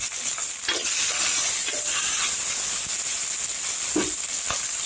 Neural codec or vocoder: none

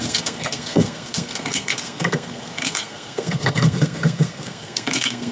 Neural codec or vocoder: codec, SNAC